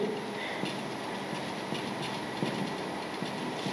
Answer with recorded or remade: recorded